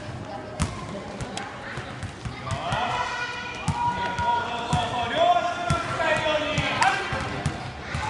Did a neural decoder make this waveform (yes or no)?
no